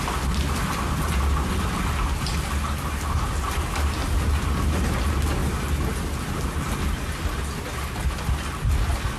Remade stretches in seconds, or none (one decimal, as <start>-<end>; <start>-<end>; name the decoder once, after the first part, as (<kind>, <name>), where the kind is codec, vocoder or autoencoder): none